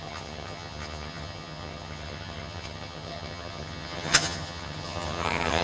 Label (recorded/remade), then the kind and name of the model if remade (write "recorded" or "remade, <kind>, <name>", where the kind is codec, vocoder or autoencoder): remade, vocoder, HiFi-GAN